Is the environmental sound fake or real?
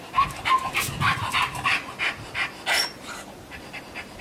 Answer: fake